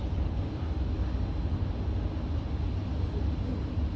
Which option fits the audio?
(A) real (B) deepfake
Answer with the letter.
A